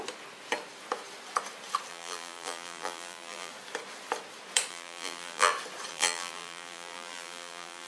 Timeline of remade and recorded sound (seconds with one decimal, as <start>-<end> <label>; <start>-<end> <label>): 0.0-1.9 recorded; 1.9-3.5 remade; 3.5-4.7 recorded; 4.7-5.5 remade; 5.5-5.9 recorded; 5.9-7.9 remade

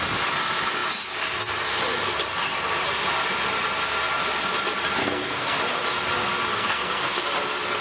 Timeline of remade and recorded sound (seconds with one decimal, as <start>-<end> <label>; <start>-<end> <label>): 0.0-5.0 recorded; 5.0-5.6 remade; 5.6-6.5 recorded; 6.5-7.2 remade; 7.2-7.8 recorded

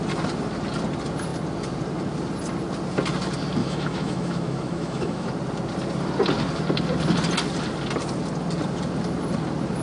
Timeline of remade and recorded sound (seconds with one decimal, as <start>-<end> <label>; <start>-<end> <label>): 0.0-3.6 recorded; 3.6-5.3 remade; 5.3-9.8 recorded